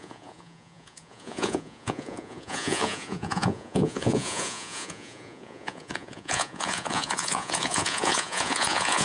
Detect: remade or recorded remade